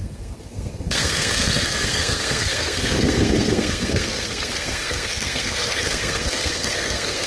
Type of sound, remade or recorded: remade